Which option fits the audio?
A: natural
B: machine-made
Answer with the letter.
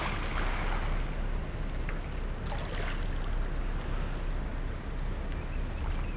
A